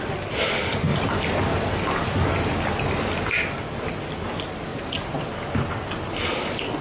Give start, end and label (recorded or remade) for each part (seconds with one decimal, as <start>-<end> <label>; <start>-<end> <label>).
0.0-6.8 recorded